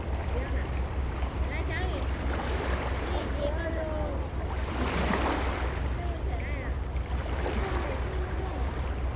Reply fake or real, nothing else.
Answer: real